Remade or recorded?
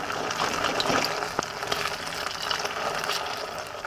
recorded